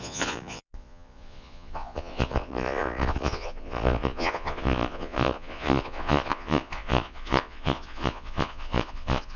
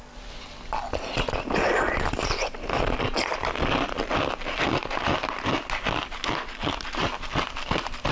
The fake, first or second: first